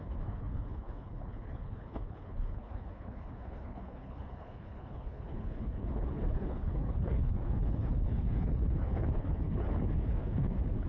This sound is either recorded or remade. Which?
remade